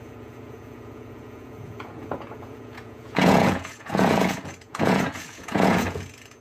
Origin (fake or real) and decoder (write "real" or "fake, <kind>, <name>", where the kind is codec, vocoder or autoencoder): fake, vocoder, Vocos